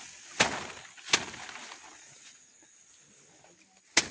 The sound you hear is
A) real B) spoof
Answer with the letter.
A